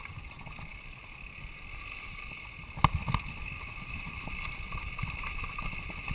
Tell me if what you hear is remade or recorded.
recorded